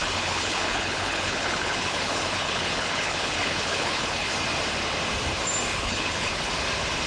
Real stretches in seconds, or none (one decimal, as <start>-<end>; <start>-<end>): 4.3-5.7; 6.5-7.1